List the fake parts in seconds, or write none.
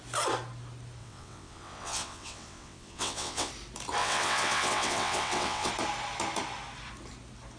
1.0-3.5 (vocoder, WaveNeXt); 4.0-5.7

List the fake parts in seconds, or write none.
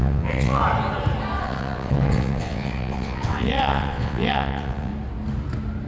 0.0-0.6 (vocoder, WaveNeXt); 1.4-4.9